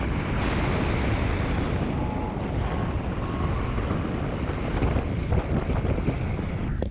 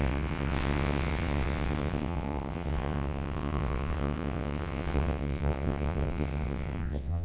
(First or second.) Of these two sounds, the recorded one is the first